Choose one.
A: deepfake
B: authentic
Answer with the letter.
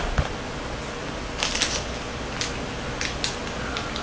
B